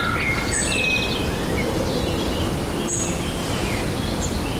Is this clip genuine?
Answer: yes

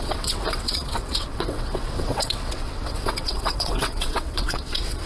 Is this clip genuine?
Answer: no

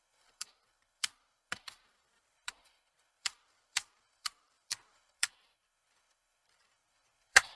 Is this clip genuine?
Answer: no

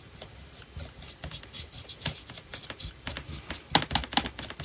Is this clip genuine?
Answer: yes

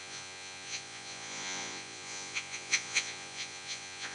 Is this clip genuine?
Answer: no